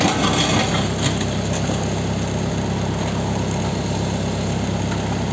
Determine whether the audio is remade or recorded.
recorded